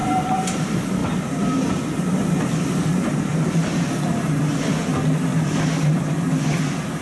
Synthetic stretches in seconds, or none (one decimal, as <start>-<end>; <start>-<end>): 0.0-0.6; 1.0-1.8; 3.3-4.4; 5.3-6.0

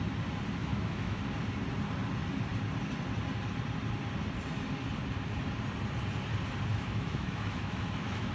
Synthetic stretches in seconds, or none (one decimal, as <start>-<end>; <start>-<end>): 0.6-1.2; 6.7-8.3